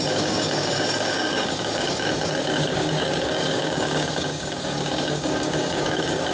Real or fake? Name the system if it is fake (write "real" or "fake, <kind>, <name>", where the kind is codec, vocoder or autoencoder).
fake, codec, DAC